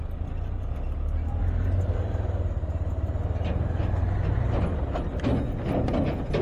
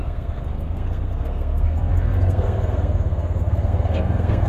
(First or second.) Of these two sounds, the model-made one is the second